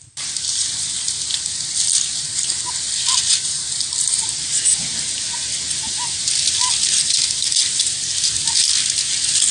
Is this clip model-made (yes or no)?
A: no